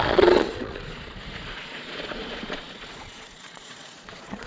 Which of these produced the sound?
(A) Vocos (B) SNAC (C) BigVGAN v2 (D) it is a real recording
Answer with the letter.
A